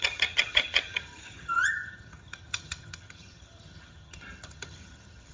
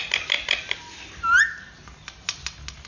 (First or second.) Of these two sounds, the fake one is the first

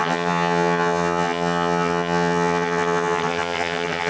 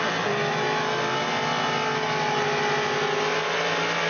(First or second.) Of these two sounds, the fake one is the first